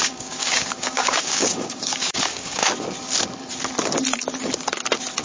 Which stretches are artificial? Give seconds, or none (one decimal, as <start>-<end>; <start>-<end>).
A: 0.0-2.6